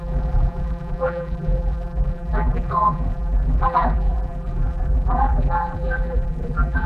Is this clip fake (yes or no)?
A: yes